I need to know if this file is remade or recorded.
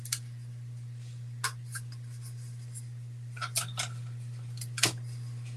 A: recorded